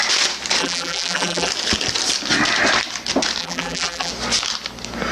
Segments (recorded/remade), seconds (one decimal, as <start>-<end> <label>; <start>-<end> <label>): 0.0-0.6 recorded; 0.6-1.5 remade; 1.5-3.4 recorded; 3.4-4.1 remade; 4.1-5.1 recorded